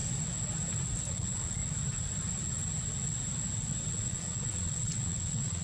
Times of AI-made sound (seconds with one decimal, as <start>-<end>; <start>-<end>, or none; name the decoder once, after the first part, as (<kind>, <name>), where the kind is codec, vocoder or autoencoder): 1.1-1.6 (vocoder, Vocos); 3.9-5.6